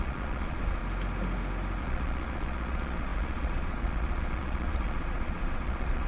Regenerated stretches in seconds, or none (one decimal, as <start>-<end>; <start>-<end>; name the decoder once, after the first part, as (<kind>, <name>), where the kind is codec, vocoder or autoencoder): 0.0-0.8 (vocoder, Vocos); 1.8-6.1